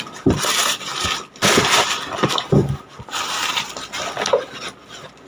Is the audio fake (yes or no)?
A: no